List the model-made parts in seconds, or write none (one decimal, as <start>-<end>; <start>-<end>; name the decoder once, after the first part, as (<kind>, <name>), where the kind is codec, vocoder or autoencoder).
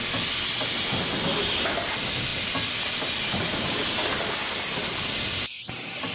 none